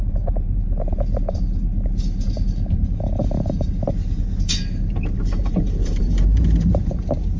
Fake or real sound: fake